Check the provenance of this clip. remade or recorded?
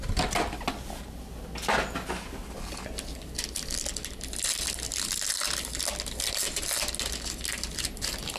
recorded